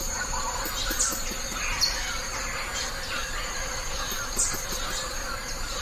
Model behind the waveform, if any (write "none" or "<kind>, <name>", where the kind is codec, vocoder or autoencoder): none